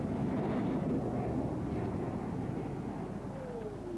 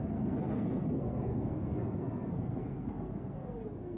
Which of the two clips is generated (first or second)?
second